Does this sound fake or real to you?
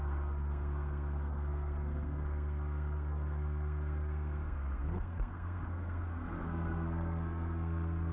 fake